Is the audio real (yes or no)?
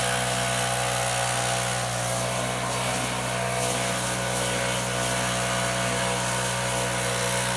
yes